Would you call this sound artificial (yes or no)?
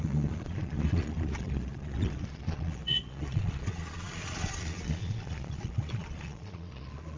yes